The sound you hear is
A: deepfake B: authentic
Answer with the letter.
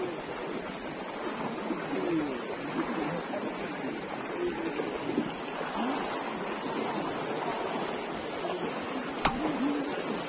B